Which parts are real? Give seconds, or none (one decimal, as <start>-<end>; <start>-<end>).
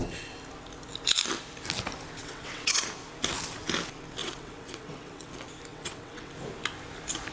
0.0-2.2; 2.8-4.2; 5.3-5.7; 6.3-7.3